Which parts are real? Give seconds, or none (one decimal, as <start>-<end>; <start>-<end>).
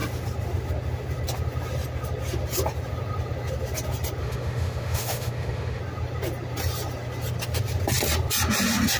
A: 0.0-4.2; 5.8-9.0